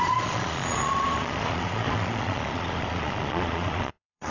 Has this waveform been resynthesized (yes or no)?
yes